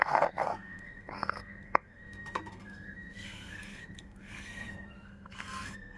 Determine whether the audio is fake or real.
fake